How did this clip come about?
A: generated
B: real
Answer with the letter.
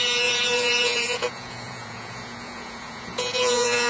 A